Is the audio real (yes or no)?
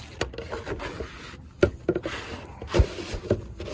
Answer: yes